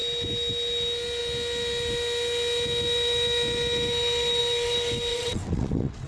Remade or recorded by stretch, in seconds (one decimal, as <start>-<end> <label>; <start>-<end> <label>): 0.0-5.1 recorded; 5.1-6.1 remade